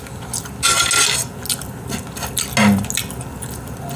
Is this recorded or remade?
recorded